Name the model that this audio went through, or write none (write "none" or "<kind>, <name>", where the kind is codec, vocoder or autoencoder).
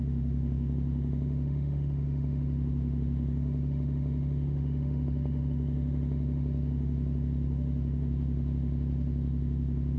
autoencoder, DAC-VAE